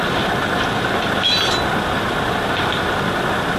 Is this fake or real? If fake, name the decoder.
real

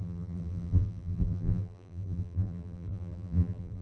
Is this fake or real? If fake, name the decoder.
fake, vocoder, BigVGAN v2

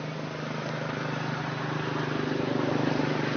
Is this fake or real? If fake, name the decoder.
real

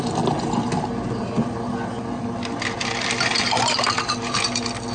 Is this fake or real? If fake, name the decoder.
real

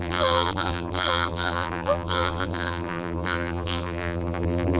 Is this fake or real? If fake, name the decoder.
fake, vocoder, BigVGAN v2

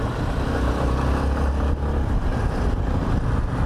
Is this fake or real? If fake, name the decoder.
real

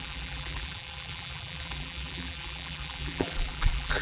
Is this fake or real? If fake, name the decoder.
fake, vocoder, BigVGAN v2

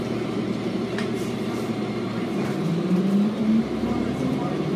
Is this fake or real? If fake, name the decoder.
fake, vocoder, BigVGAN v2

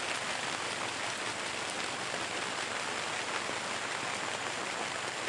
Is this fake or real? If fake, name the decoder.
real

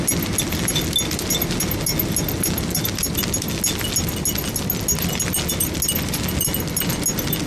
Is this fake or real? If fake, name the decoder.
real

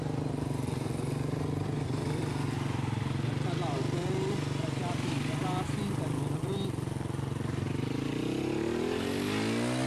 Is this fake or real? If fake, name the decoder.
real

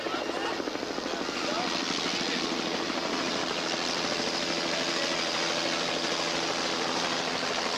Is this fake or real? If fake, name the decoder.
real